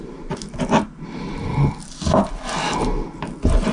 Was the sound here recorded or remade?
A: recorded